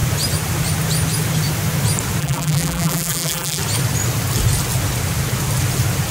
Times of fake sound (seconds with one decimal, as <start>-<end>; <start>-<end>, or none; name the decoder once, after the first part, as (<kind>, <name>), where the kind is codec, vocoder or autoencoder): 2.2-3.6 (vocoder, BigVGAN v2)